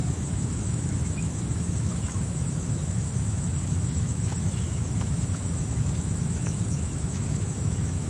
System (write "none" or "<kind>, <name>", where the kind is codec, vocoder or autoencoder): autoencoder, DAC-VAE